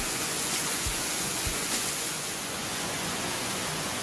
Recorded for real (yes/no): no